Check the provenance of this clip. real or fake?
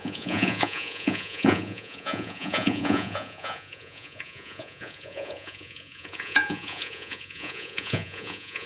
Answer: fake